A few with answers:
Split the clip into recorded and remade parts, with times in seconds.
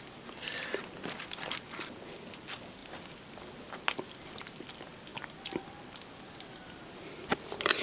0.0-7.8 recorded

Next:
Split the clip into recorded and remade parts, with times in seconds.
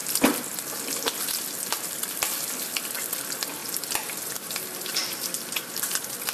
0.0-1.4 recorded; 1.4-3.6 remade; 3.6-4.3 recorded; 4.3-5.0 remade; 5.0-5.7 recorded; 5.7-6.3 remade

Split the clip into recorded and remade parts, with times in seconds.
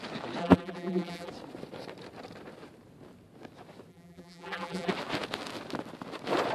0.0-0.4 recorded; 0.4-1.3 remade; 1.3-3.9 recorded; 3.9-4.9 remade; 4.9-6.5 recorded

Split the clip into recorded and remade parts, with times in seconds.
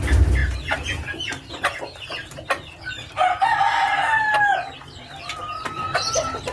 0.0-6.5 recorded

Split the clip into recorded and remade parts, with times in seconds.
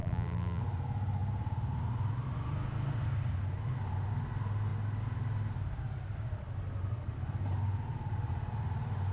0.0-0.6 remade; 0.6-9.1 recorded